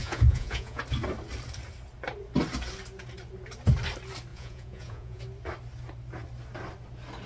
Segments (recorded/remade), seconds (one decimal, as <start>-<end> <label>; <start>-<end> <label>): 0.0-0.8 remade; 0.8-4.3 recorded; 4.3-5.2 remade; 5.2-7.3 recorded